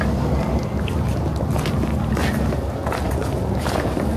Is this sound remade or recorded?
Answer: recorded